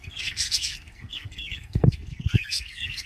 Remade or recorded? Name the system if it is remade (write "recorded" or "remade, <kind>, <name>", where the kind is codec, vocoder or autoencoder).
remade, codec, SNAC